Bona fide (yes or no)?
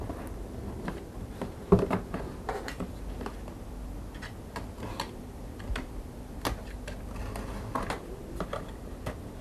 yes